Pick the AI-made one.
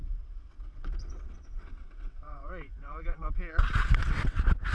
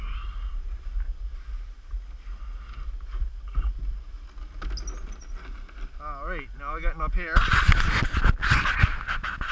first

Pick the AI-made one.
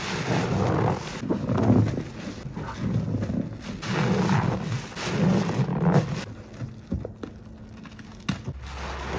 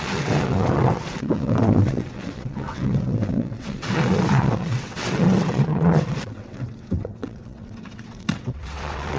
second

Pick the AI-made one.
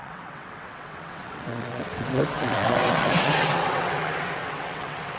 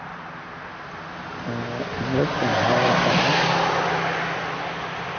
first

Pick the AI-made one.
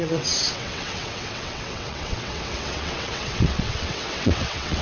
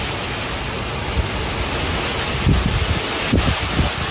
first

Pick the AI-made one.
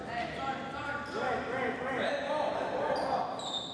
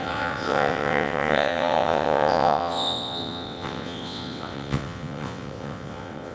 second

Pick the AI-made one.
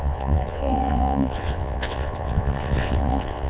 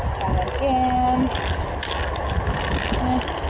first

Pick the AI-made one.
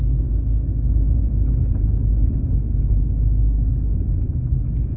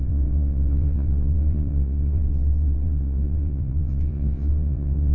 second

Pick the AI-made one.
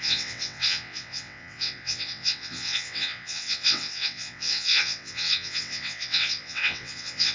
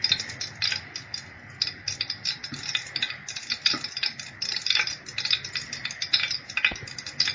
first